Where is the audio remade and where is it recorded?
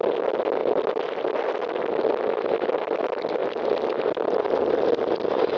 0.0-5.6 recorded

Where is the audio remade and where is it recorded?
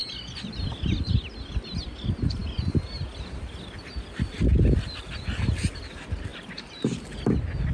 0.0-7.7 recorded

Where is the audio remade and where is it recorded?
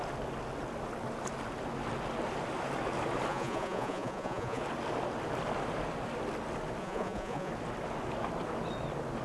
0.0-3.3 recorded; 3.3-4.6 remade; 4.6-6.8 recorded; 6.8-7.5 remade; 7.5-9.2 recorded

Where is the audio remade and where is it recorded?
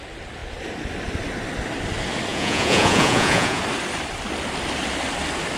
0.0-2.3 recorded; 2.3-3.6 remade; 3.6-5.6 recorded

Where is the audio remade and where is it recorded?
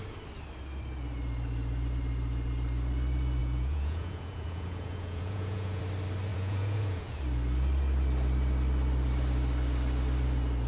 0.0-3.4 recorded; 3.4-5.8 remade; 5.8-6.3 recorded; 6.3-7.2 remade; 7.2-10.7 recorded